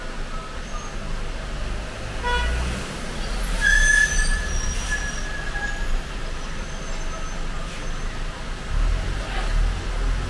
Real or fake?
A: real